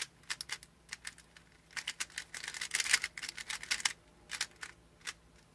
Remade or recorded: recorded